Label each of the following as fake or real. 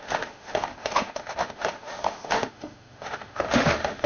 fake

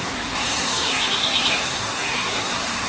fake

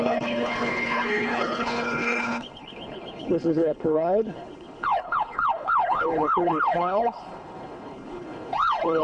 fake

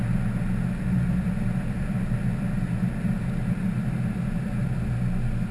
real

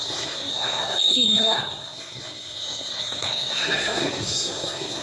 fake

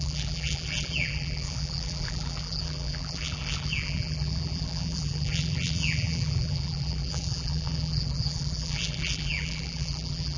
fake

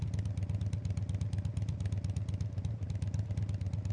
real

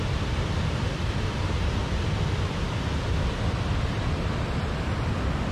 real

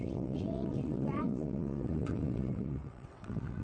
fake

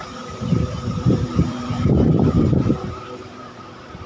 fake